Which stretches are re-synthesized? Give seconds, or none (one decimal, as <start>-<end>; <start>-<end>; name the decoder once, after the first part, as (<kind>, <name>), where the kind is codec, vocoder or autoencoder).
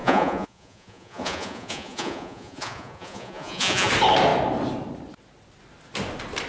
0.0-3.9 (vocoder, Vocos)